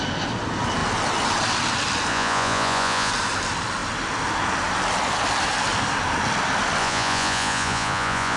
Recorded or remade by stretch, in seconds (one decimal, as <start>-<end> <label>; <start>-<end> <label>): 0.0-2.1 recorded; 2.1-3.1 remade; 3.1-6.8 recorded; 6.8-8.4 remade